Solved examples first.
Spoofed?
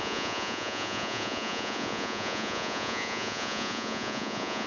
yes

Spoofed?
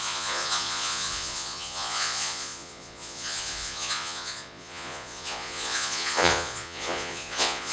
yes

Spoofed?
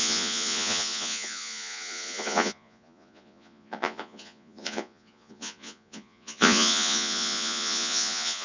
yes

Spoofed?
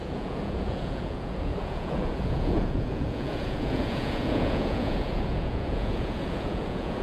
yes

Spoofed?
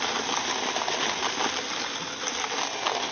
no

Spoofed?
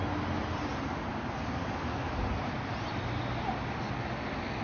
no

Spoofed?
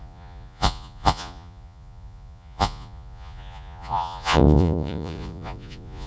yes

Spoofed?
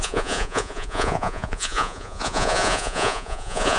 yes